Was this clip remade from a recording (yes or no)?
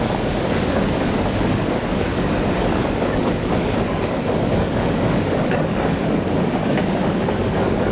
yes